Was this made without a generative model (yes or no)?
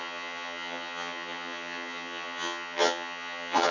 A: no